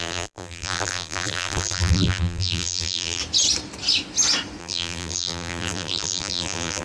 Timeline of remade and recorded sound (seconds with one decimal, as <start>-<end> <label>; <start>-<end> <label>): 0.0-3.2 remade; 3.2-4.6 recorded; 4.6-6.8 remade